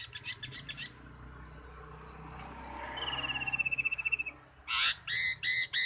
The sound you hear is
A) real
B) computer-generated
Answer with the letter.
A